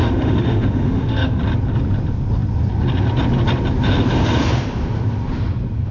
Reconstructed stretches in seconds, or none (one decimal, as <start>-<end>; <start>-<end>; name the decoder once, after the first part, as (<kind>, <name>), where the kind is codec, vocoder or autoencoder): 0.0-1.4 (autoencoder, DAC-VAE)